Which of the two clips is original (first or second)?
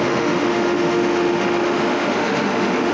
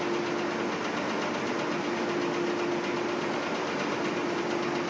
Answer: second